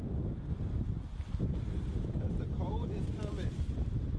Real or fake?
real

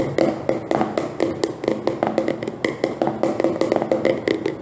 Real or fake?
real